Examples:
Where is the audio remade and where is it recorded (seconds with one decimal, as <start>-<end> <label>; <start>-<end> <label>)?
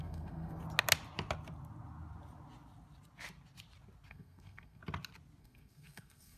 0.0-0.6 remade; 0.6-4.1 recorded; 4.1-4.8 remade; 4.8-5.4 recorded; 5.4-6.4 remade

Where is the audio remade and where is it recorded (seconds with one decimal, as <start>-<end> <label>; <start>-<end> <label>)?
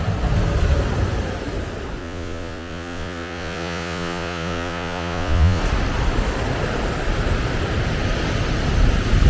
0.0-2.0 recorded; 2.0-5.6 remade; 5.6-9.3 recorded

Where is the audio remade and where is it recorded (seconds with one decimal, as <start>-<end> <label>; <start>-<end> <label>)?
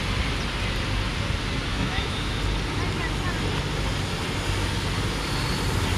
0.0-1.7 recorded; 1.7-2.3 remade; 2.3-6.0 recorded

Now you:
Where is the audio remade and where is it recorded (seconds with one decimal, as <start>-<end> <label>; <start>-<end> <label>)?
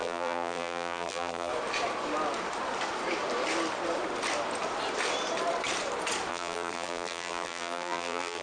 0.0-1.5 remade; 1.5-6.3 recorded; 6.3-8.4 remade